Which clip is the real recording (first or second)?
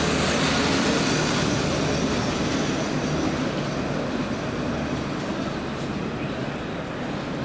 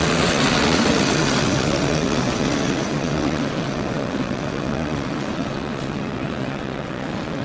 first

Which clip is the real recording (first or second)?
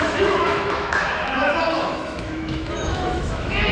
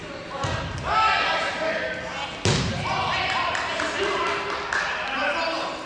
second